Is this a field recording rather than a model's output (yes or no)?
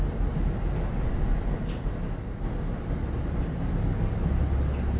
yes